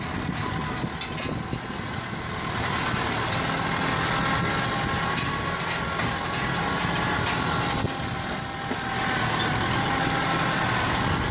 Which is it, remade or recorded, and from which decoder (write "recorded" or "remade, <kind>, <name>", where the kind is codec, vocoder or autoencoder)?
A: recorded